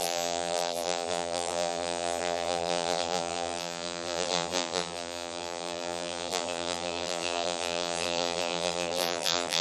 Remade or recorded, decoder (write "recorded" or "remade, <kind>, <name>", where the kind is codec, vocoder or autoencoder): remade, vocoder, BigVGAN v2